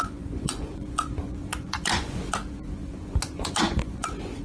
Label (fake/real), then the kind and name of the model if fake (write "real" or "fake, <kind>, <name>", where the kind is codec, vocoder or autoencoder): fake, vocoder, Vocos